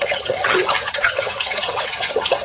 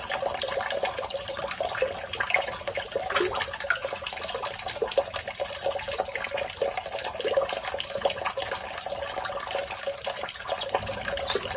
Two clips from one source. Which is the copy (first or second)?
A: first